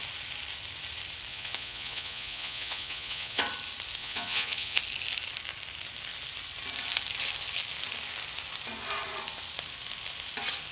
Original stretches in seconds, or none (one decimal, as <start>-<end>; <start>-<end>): 0.0-1.3; 3.4-4.0; 4.8-10.7